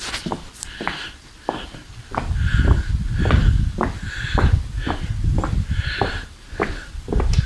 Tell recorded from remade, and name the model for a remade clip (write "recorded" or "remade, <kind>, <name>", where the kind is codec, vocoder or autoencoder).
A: recorded